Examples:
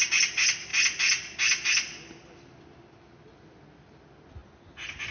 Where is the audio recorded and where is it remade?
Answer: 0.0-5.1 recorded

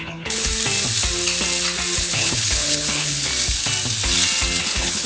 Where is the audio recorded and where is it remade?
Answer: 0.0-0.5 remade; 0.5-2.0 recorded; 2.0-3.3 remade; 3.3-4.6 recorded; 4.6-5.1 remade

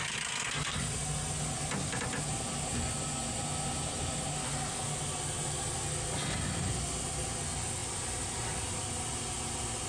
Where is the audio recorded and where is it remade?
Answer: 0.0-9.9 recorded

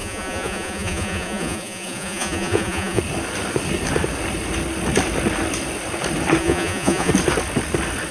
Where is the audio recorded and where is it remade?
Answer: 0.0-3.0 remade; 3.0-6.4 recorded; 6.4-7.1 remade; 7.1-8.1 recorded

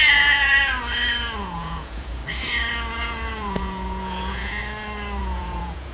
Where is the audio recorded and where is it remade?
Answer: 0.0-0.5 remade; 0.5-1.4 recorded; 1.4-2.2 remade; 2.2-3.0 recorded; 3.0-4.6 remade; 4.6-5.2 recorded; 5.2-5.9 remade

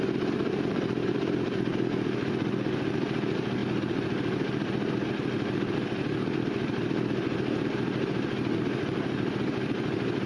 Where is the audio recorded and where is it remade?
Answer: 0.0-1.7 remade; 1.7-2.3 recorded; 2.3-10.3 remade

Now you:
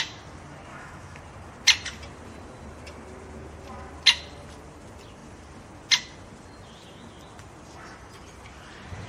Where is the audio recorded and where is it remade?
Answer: 0.0-0.7 recorded; 0.7-1.2 remade; 1.2-9.1 recorded

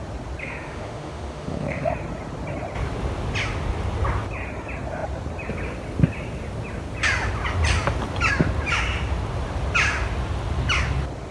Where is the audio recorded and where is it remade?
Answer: 0.0-0.4 recorded; 0.4-1.9 remade; 1.9-11.3 recorded